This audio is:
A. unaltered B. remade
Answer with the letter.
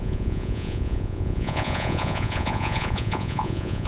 B